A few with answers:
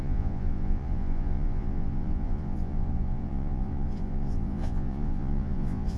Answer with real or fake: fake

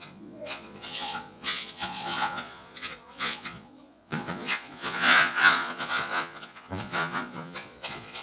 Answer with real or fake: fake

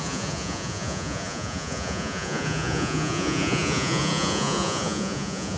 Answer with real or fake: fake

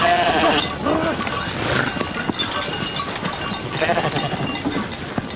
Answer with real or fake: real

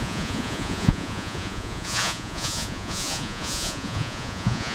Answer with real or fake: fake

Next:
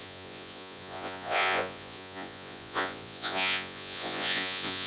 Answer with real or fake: fake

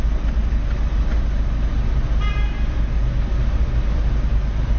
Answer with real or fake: real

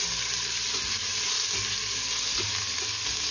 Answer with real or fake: real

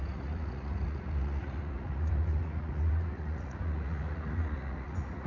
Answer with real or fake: fake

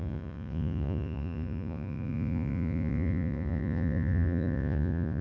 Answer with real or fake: fake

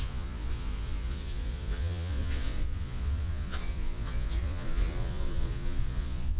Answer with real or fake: fake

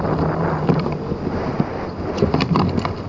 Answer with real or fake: real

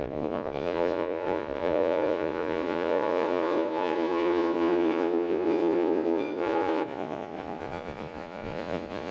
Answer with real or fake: fake